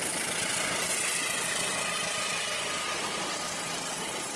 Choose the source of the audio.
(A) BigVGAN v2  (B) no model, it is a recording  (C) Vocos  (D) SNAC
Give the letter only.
B